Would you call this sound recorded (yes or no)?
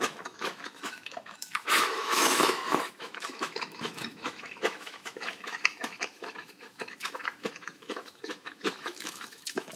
no